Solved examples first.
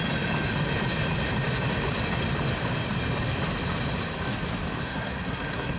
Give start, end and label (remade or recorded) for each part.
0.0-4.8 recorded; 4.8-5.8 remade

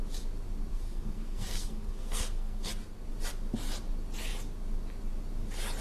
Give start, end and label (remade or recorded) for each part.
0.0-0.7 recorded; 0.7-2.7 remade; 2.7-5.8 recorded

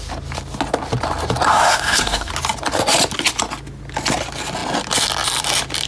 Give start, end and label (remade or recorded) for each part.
0.0-1.5 recorded; 1.5-2.3 remade; 2.3-5.9 recorded

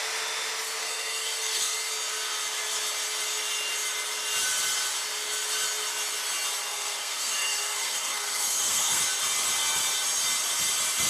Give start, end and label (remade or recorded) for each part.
0.0-0.8 recorded; 0.8-1.9 remade; 1.9-6.7 recorded; 6.7-9.0 remade; 9.0-11.1 recorded

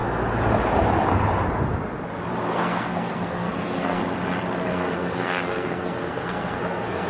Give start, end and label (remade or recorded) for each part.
0.0-2.5 recorded; 2.5-4.0 remade; 4.0-4.7 recorded; 4.7-7.1 remade